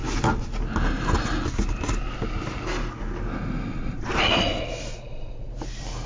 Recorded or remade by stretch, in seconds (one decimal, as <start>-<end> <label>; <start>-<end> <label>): 0.0-3.7 recorded; 3.7-4.3 remade; 4.3-4.9 recorded; 4.9-5.5 remade; 5.5-6.1 recorded